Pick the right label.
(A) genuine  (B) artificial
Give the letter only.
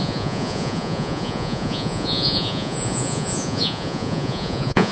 B